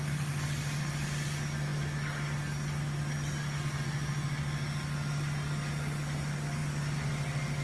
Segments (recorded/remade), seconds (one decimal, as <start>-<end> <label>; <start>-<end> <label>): 0.0-7.6 recorded